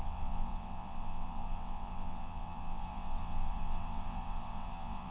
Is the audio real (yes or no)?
no